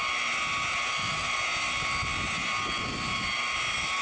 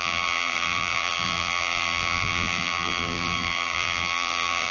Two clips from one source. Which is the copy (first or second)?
second